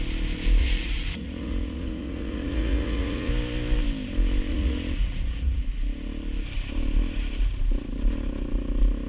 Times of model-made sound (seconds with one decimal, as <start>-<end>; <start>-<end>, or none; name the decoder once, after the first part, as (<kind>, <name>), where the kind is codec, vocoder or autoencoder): 0.6-3.3 (vocoder, Vocos); 4.5-5.6